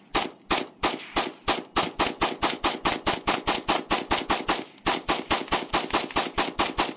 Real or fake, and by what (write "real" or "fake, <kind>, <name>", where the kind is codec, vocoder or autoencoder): real